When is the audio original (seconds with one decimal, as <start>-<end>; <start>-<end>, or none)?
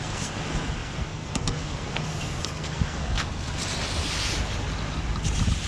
3.6-5.7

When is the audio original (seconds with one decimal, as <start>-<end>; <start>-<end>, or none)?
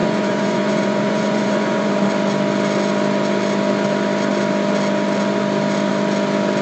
1.9-6.6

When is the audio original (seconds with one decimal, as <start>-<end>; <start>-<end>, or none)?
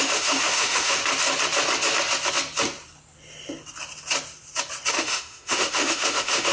1.0-4.9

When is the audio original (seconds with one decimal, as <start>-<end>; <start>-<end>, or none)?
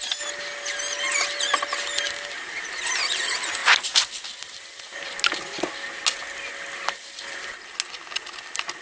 0.0-8.8